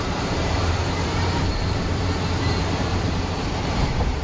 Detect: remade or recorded remade